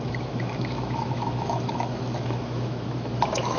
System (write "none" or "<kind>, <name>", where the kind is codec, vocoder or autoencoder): autoencoder, DAC-VAE